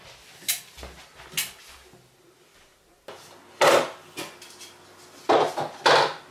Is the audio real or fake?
real